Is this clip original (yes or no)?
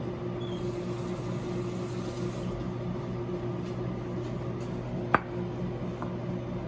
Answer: yes